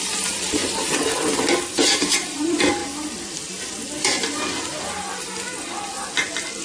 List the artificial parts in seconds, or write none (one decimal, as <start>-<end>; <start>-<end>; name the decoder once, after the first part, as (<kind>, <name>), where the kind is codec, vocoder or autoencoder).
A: 0.0-0.6 (vocoder, BigVGAN v2); 1.7-2.8